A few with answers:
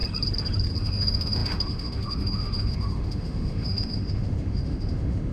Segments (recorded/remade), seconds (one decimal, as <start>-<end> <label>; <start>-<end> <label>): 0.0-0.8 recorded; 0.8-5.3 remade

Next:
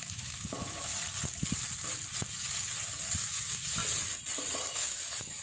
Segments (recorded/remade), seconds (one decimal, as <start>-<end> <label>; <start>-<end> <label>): 0.0-0.9 remade; 0.9-3.2 recorded; 3.2-3.8 remade; 3.8-4.7 recorded; 4.7-5.4 remade

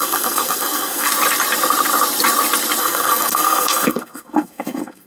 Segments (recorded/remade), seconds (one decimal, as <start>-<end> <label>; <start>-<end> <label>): 0.0-1.1 remade; 1.1-2.8 recorded; 2.8-5.1 remade

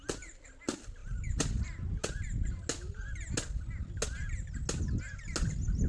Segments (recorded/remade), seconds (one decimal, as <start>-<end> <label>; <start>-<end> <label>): 0.0-5.9 recorded

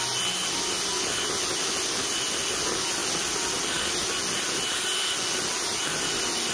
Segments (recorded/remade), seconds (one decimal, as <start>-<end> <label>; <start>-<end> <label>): 0.0-6.5 recorded

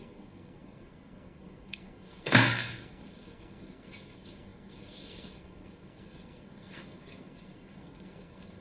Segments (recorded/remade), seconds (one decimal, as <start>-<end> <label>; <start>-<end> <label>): 0.0-8.6 remade

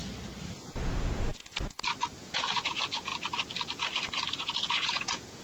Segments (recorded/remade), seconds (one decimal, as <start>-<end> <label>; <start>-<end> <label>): 0.0-0.8 recorded; 0.8-1.3 remade; 1.3-2.2 recorded; 2.2-3.1 remade; 3.1-4.3 recorded; 4.3-5.4 remade

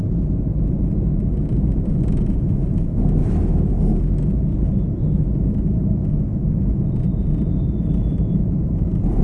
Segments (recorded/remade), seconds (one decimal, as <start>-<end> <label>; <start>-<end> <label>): 0.0-3.2 recorded; 3.2-3.7 remade; 3.7-7.1 recorded; 7.1-9.2 remade